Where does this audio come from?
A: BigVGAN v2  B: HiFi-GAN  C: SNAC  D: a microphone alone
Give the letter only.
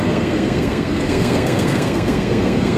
C